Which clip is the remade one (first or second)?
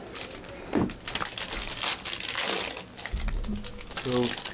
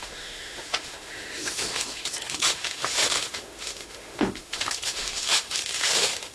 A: second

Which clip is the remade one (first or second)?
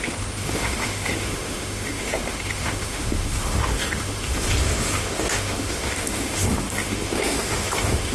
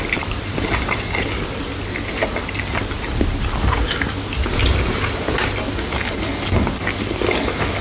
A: first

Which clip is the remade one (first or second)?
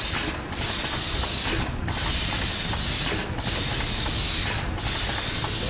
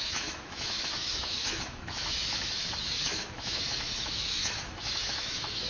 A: second